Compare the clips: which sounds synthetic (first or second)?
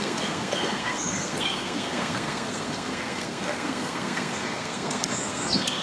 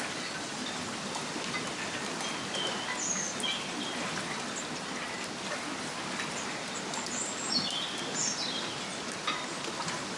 first